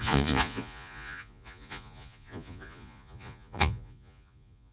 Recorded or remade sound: remade